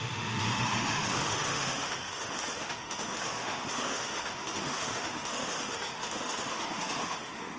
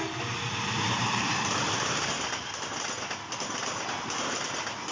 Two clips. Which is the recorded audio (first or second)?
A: second